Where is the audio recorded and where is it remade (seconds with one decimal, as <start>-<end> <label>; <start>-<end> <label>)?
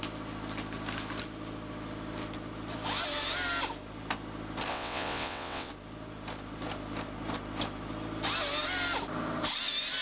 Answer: 0.0-4.7 recorded; 4.7-5.7 remade; 5.7-10.0 recorded